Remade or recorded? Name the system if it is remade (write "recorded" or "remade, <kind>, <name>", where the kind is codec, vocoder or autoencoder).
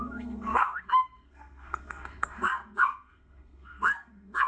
remade, codec, SNAC